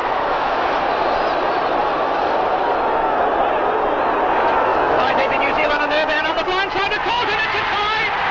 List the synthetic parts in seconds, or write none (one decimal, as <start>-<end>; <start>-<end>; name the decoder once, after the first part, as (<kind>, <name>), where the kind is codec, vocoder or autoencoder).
0.0-0.7 (autoencoder, DAC-VAE); 4.7-6.3